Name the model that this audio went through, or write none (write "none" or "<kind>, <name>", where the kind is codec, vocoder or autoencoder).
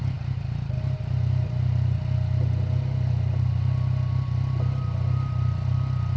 none